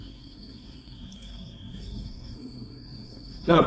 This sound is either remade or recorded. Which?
remade